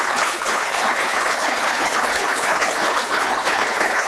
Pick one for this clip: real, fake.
fake